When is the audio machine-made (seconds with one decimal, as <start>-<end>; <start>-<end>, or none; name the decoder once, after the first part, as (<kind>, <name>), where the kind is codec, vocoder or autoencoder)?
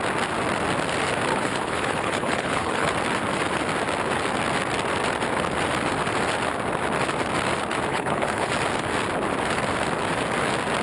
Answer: 1.3-2.9 (codec, HILCodec); 7.9-8.5